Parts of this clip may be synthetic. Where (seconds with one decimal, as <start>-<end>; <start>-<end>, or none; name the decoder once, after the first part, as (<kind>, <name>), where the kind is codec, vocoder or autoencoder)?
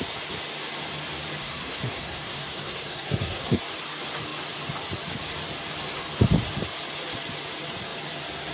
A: 1.4-3.6 (codec, SNAC)